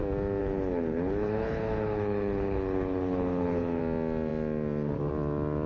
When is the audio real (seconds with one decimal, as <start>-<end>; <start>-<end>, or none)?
0.0-0.4; 3.8-5.7

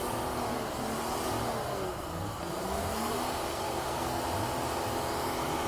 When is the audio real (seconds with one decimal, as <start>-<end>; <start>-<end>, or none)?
0.0-1.7; 3.1-3.5; 4.2-5.7